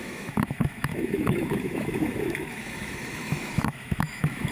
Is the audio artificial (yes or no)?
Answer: yes